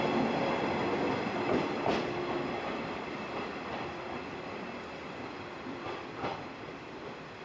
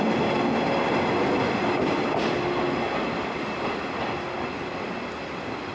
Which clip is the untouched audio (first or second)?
second